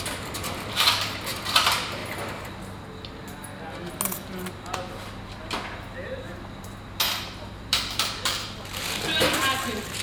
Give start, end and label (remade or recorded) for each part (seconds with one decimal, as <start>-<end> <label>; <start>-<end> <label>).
0.0-2.0 remade; 2.0-7.0 recorded; 7.0-10.0 remade